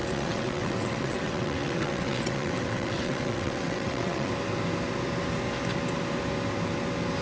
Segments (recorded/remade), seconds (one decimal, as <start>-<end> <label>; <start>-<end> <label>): 0.0-4.3 remade; 4.3-7.2 recorded